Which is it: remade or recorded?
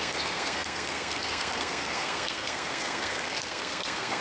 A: remade